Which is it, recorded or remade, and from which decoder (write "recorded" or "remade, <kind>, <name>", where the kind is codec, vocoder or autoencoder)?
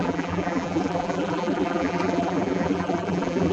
remade, vocoder, BigVGAN v2